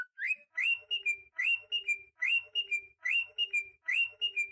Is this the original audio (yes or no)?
no